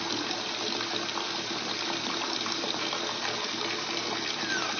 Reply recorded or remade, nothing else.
recorded